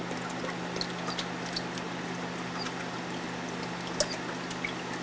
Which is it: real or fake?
real